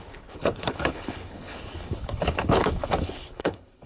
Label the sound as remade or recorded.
remade